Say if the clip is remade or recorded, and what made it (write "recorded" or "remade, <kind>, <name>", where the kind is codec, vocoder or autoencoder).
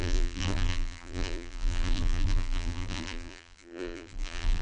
remade, vocoder, BigVGAN v2